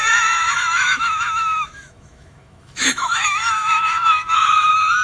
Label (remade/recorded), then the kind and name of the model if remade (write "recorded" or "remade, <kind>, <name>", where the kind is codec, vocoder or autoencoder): remade, autoencoder, DAC-VAE